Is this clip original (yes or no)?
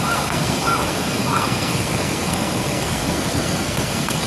no